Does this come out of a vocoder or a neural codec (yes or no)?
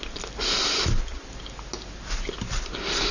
no